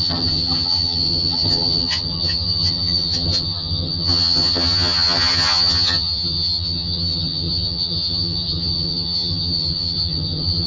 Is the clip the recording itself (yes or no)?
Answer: no